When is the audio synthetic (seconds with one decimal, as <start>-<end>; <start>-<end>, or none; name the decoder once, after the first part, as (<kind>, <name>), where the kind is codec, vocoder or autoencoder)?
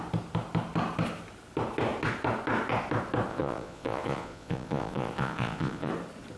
3.3-5.9 (vocoder, Vocos)